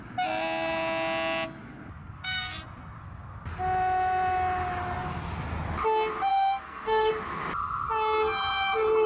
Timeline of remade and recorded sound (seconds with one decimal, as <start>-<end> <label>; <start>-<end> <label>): 0.0-2.0 recorded; 2.0-2.6 remade; 2.6-6.3 recorded; 6.3-7.1 remade; 7.1-9.1 recorded